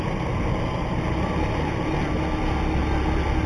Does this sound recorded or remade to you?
recorded